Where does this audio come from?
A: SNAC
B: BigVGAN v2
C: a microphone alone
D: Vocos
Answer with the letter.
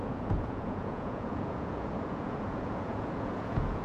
D